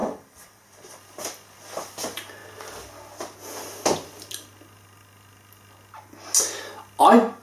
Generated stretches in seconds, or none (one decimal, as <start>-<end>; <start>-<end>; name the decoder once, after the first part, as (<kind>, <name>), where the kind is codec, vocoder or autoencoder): 0.0-1.0 (vocoder, BigVGAN v2)